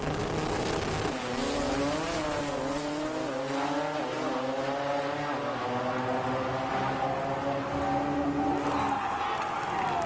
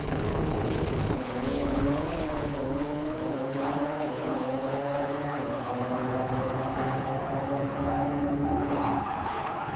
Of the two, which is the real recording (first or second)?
first